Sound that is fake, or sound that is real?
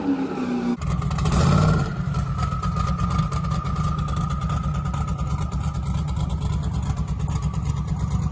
real